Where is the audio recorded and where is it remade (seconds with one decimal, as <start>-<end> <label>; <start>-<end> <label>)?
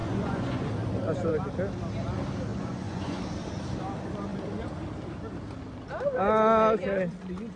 0.0-0.7 remade; 0.7-2.5 recorded; 2.5-3.2 remade; 3.2-7.6 recorded